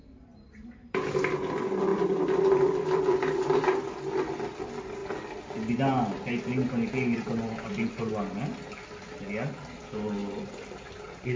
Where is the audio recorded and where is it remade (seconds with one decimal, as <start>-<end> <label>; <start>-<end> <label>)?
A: 0.0-1.9 recorded; 1.9-4.1 remade; 4.1-10.2 recorded; 10.2-11.4 remade